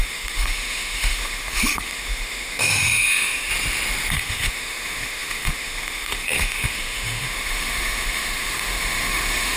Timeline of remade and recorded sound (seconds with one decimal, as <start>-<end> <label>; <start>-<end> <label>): 0.0-3.5 remade; 3.5-4.1 recorded; 4.1-9.6 remade